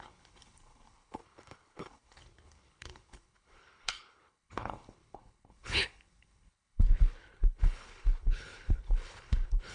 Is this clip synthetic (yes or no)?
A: yes